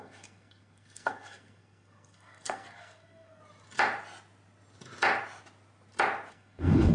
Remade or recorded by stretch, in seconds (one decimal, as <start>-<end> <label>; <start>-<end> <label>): 0.0-3.4 remade; 3.4-6.3 recorded; 6.3-6.9 remade